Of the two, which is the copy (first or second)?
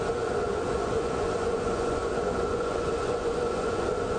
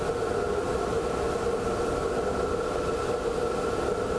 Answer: first